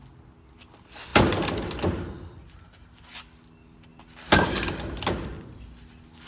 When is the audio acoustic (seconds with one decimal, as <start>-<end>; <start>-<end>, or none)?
0.0-3.9; 5.3-6.3